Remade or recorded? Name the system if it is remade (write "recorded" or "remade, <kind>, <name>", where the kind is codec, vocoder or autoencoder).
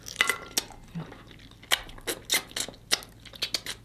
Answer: recorded